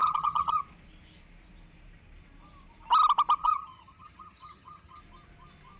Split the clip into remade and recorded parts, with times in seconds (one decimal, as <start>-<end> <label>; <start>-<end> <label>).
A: 0.0-0.6 remade; 0.6-3.4 recorded; 3.4-5.0 remade; 5.0-5.8 recorded